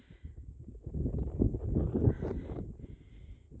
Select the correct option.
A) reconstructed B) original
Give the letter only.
B